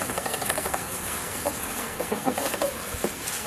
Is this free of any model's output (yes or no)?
no